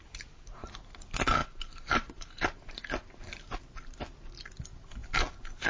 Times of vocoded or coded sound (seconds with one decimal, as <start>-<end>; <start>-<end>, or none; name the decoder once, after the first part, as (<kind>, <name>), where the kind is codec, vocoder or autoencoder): none